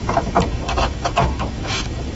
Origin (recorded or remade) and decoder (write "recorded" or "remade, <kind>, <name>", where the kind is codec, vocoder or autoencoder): remade, autoencoder, DAC-VAE